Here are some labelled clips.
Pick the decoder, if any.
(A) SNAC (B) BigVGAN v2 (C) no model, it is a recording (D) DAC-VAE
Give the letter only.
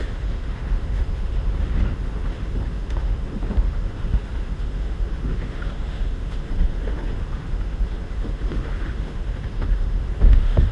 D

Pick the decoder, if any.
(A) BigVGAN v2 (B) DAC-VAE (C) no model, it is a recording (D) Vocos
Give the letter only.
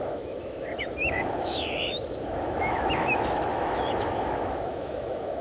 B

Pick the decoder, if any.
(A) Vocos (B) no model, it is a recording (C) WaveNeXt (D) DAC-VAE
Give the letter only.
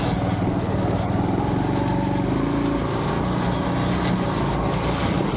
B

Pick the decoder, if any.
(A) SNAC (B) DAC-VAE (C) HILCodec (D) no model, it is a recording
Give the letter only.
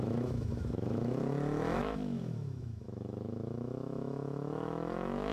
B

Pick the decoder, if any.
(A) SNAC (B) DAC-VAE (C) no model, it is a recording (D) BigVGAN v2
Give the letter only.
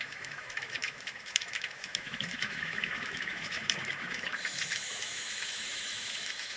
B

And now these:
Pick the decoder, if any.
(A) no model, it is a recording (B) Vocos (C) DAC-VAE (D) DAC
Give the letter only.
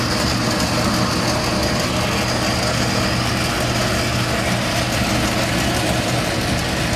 A